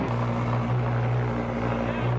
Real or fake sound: real